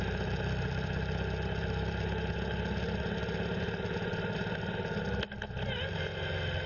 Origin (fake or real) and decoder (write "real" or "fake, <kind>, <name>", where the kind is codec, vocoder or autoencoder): real